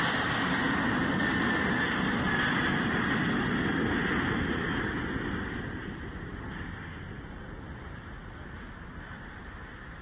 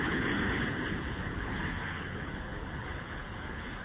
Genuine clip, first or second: first